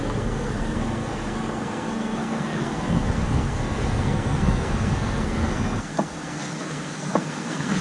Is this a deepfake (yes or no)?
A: yes